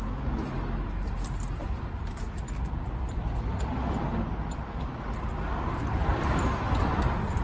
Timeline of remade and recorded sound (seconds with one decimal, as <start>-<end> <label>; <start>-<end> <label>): 0.0-1.6 recorded; 1.6-3.6 remade; 3.6-5.8 recorded; 5.8-7.0 remade; 7.0-7.4 recorded